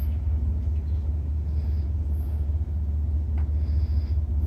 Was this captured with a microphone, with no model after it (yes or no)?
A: yes